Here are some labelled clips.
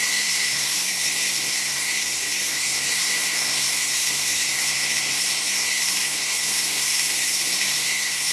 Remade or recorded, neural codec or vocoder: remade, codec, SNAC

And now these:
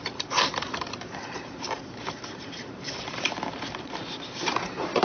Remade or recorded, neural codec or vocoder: remade, vocoder, BigVGAN v2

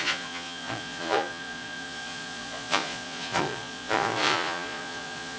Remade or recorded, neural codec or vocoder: remade, vocoder, Vocos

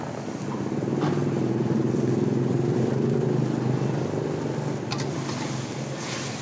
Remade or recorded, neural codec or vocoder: recorded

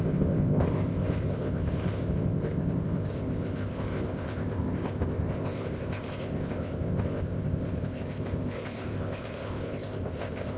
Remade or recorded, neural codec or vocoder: remade, codec, ZipCodec